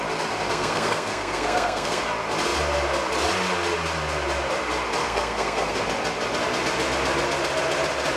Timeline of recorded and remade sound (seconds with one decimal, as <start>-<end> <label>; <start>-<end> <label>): 0.0-0.5 recorded; 0.5-2.0 remade; 2.0-5.0 recorded; 5.0-5.8 remade; 5.8-8.2 recorded